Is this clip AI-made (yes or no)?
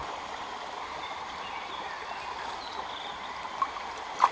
yes